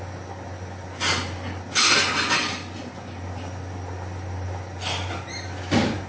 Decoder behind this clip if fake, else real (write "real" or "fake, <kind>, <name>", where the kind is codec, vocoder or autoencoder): real